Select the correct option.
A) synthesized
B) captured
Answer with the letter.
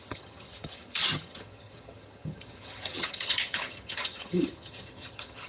A